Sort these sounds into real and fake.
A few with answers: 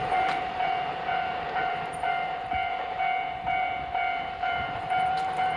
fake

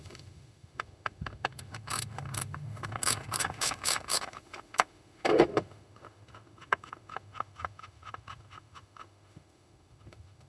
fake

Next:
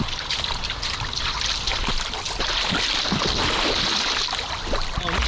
real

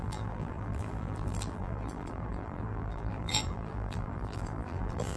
fake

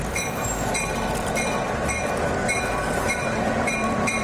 fake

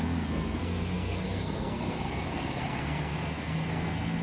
fake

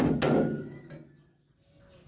real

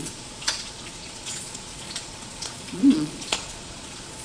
fake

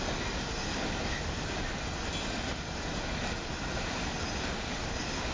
real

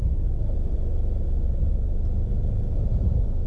real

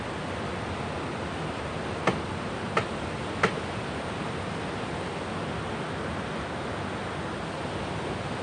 real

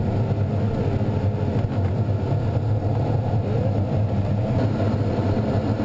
real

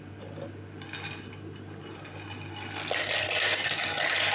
real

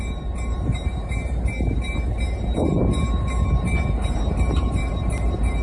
fake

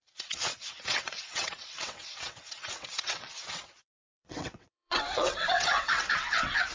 fake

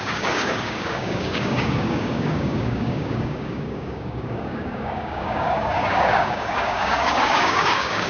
fake